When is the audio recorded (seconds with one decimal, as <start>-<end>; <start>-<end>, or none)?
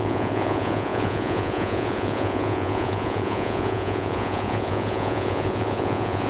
none